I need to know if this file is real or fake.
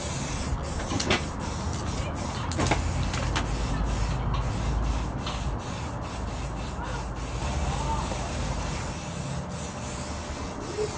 real